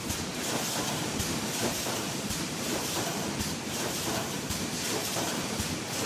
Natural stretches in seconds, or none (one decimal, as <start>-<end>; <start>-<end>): 0.0-1.6; 5.3-6.1